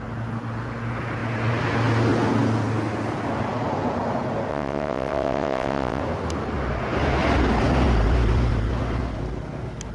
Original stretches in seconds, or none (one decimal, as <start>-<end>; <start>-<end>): 0.0-4.5; 6.0-9.9